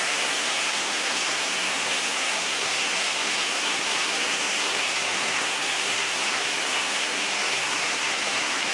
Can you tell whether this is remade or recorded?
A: remade